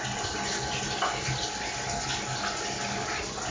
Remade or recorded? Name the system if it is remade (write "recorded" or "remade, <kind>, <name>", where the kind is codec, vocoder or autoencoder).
recorded